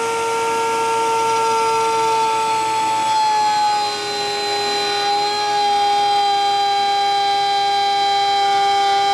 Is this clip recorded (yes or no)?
yes